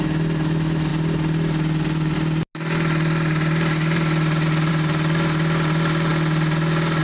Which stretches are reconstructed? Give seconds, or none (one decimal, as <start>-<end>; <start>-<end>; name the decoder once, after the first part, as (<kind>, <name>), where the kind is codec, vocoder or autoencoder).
none